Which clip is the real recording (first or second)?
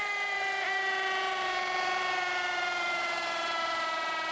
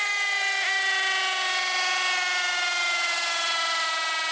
second